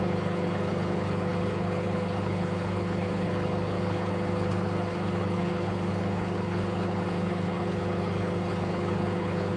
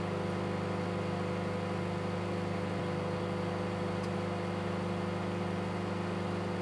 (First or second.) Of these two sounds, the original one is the second